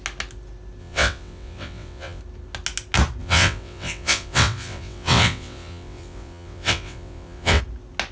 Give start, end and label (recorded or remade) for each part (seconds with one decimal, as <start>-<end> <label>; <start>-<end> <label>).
0.0-0.8 recorded; 0.8-2.2 remade; 2.2-3.2 recorded; 3.2-7.6 remade; 7.6-8.1 recorded